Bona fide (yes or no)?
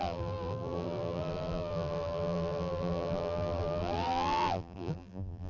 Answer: no